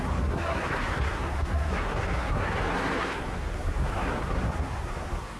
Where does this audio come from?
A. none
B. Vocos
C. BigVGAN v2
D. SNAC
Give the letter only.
D